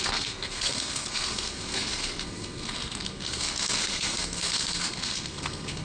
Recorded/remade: remade